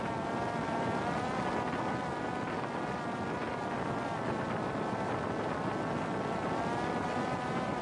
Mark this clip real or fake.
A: real